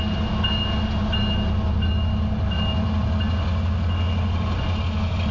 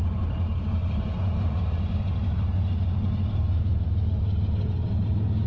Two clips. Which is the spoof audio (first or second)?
second